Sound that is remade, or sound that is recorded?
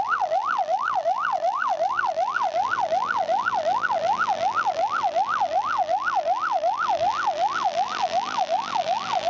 remade